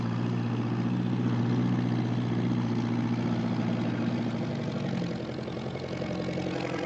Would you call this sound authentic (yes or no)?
yes